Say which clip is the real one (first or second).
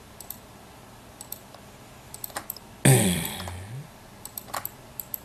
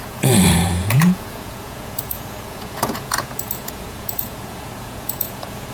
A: first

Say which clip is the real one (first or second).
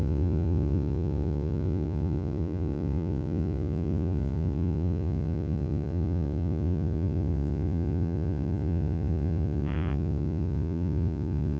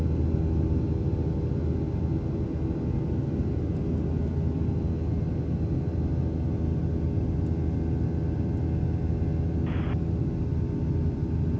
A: second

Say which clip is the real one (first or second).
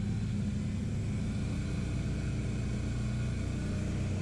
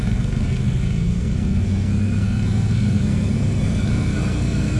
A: first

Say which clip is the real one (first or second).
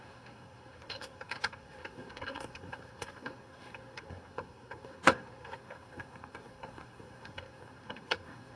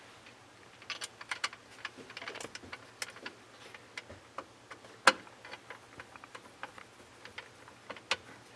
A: second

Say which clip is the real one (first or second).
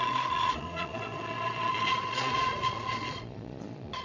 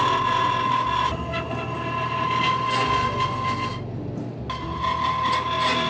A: second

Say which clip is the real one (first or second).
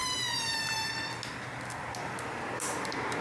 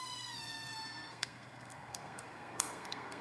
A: first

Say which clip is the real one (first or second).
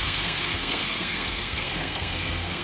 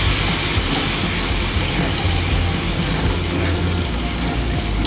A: second